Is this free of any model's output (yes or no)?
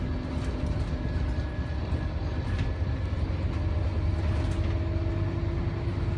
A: yes